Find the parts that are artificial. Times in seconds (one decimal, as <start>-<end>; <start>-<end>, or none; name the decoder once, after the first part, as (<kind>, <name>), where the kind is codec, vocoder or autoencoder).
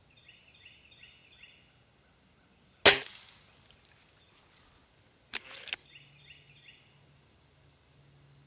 none